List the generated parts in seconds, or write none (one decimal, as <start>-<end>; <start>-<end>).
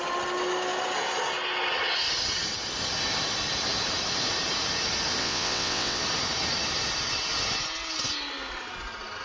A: 5.2-6.0